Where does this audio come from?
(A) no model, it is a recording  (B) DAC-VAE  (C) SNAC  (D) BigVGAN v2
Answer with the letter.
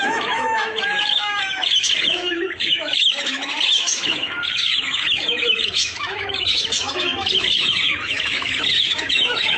B